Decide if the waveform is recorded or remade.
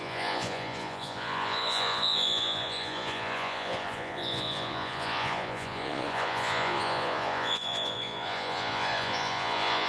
remade